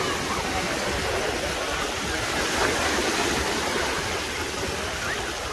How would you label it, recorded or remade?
recorded